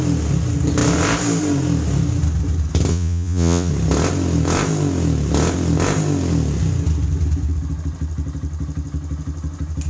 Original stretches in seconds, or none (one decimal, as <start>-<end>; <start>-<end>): 0.0-2.9; 3.7-9.9

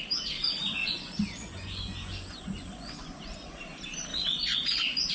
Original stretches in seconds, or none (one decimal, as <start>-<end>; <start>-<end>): 0.0-0.8; 3.6-4.1

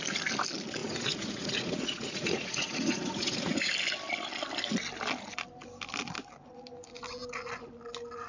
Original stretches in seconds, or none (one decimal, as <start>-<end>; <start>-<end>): 0.0-0.8; 3.7-8.3